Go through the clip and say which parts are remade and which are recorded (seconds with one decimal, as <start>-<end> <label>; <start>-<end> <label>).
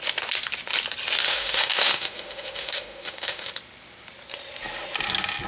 0.0-1.2 recorded; 1.2-3.5 remade; 3.5-5.5 recorded